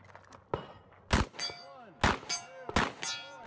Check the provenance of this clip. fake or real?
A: real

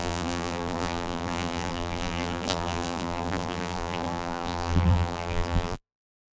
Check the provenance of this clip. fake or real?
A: fake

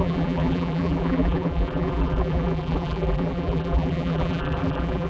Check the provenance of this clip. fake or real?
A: fake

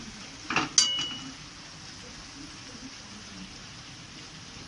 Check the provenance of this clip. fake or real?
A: real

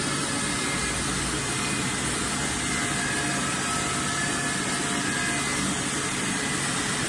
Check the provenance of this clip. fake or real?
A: real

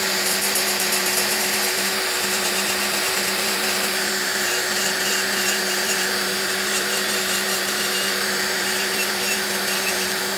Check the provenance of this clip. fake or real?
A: fake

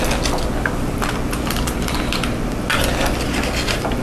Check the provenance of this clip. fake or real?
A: real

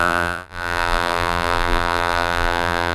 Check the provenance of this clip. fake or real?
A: fake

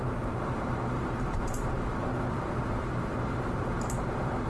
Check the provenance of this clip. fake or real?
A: fake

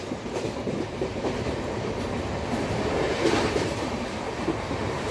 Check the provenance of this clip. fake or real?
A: fake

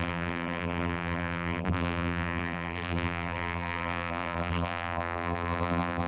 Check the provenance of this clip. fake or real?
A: fake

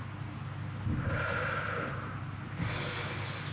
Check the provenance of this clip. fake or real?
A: real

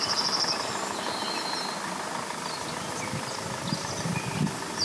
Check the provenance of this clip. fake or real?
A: real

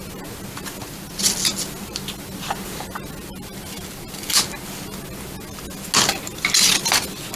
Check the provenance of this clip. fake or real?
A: real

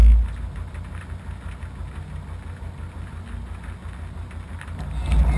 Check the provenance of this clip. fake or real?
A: real